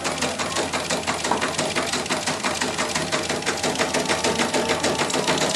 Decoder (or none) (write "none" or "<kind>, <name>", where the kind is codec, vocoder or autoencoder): none